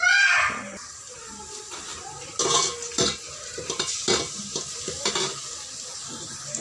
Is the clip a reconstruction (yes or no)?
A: no